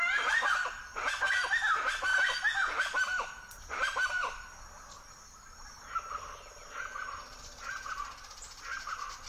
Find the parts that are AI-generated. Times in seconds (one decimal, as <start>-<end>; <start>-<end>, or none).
2.1-5.1